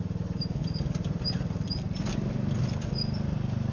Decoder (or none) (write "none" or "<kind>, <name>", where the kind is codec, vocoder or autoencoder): none